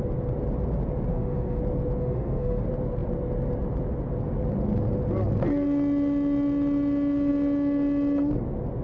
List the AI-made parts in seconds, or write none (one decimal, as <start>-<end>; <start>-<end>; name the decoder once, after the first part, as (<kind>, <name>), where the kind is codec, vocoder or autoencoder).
1.1-1.6 (autoencoder, DAC-VAE); 2.0-2.6